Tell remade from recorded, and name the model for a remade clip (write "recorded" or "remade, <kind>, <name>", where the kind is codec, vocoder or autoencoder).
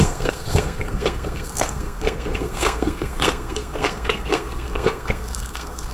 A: remade, codec, SNAC